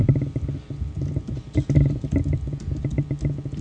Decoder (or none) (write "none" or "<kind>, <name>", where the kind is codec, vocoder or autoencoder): none